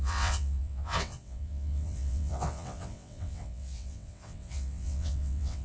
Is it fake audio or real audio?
fake